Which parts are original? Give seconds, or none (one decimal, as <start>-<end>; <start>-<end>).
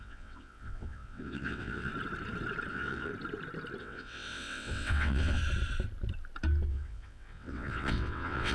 1.9-2.7; 3.1-3.8; 5.4-6.7